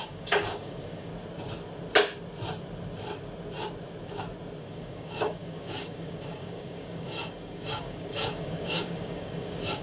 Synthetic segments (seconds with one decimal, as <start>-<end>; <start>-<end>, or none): 0.0-1.1; 4.6-9.8